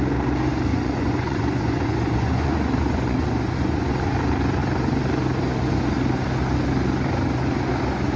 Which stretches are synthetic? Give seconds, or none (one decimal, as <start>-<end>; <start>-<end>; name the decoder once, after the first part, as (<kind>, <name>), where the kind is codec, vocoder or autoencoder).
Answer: 0.7-3.9 (vocoder, Vocos)